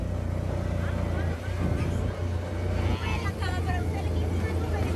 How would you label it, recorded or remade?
recorded